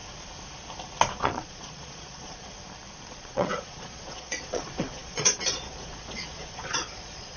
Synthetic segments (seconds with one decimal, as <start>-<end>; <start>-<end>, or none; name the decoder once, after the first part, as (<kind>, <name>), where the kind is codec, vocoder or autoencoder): 1.1-2.5 (vocoder, Vocos); 3.1-7.4